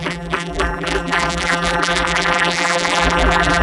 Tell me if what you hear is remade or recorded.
remade